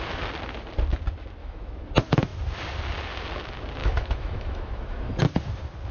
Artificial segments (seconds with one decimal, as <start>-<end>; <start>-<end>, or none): 1.4-1.9; 3.8-5.2